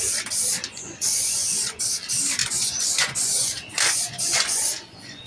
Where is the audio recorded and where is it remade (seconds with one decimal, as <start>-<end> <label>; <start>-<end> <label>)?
0.0-0.7 recorded; 0.7-1.8 remade; 1.8-2.4 recorded; 2.4-5.3 remade